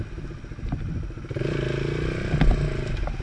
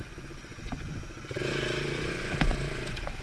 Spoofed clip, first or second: second